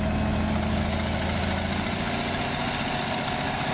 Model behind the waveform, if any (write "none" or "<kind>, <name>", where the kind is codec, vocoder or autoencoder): none